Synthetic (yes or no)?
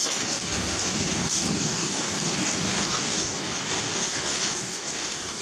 yes